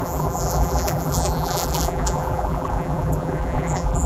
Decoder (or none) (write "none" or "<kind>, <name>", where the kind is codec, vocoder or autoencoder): vocoder, BigVGAN v2